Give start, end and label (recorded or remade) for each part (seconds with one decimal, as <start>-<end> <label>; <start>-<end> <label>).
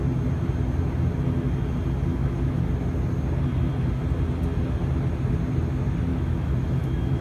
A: 0.0-2.1 recorded; 2.1-2.7 remade; 2.7-6.1 recorded; 6.1-7.2 remade